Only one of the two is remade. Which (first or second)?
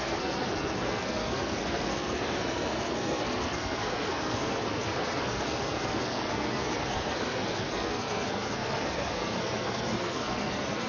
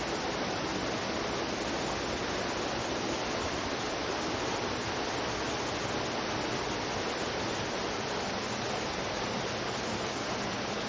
first